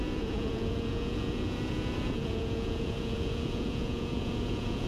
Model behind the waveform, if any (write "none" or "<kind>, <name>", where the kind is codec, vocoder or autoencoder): vocoder, Vocos